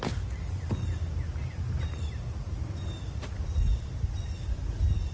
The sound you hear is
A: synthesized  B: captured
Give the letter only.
B